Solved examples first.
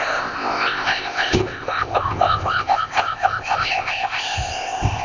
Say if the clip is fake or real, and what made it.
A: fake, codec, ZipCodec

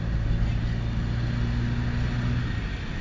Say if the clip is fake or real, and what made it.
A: real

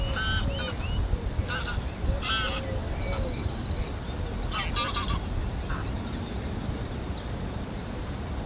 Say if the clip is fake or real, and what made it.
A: real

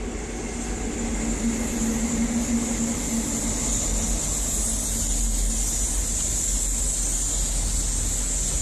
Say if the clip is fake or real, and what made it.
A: real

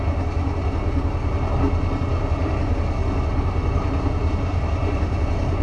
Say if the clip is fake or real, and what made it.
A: real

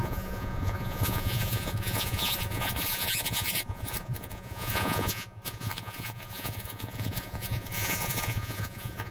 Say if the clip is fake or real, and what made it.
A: fake, vocoder, Vocos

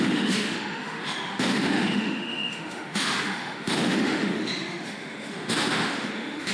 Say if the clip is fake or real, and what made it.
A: fake, autoencoder, DAC-VAE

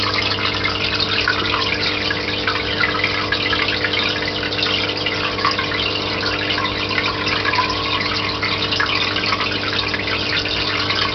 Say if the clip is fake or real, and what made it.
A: real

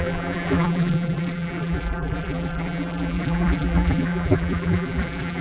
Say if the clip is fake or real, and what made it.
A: fake, vocoder, BigVGAN v2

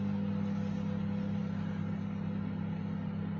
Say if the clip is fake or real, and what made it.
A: real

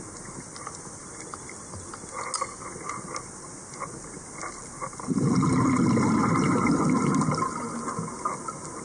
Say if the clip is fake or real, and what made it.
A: real